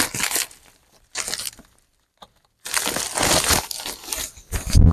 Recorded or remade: recorded